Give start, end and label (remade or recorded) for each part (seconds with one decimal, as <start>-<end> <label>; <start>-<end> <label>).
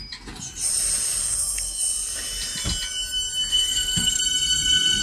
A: 0.0-1.2 recorded; 1.2-1.8 remade; 1.8-3.5 recorded; 3.5-4.2 remade; 4.2-5.0 recorded